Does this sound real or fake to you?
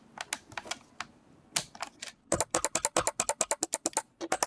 real